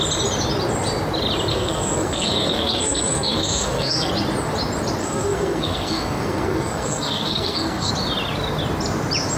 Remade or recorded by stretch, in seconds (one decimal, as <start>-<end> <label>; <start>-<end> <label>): 0.0-1.5 recorded; 1.5-4.1 remade; 4.1-5.0 recorded; 5.0-7.9 remade; 7.9-9.4 recorded